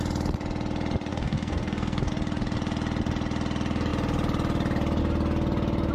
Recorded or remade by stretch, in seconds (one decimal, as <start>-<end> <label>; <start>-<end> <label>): 0.0-1.1 recorded; 1.1-2.1 remade; 2.1-5.9 recorded